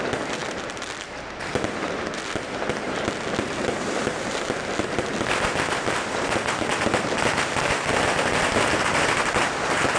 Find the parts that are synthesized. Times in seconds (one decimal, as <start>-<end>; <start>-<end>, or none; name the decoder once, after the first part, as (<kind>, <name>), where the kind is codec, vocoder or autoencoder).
0.0-6.7 (vocoder, BigVGAN v2); 7.3-10.0